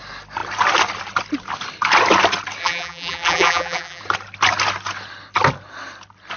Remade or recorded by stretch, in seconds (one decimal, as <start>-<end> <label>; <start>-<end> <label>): 0.0-2.6 recorded; 2.6-4.0 remade; 4.0-6.4 recorded